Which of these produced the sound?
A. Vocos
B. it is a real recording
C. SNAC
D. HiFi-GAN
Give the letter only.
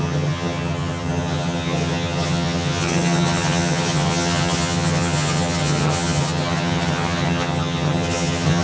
D